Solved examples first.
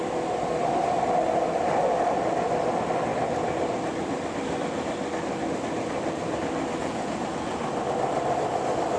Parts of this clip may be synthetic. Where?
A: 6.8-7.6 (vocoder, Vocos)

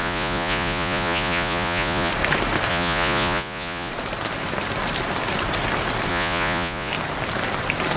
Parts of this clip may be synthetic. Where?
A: 0.0-2.1 (vocoder, Vocos); 2.7-3.9; 6.1-6.9

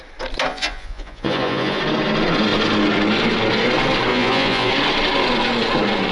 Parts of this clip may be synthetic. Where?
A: 0.5-1.8 (vocoder, Vocos); 4.1-4.7

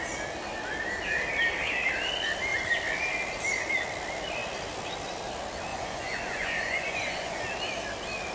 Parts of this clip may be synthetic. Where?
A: 5.7-7.4 (vocoder, Vocos)

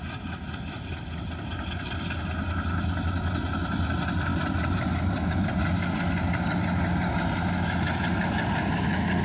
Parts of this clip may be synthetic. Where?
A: none

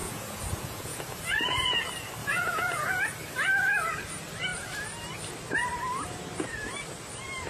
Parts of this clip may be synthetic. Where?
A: 0.0-1.8 (vocoder, Vocos); 2.2-3.0